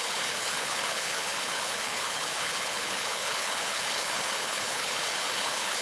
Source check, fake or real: fake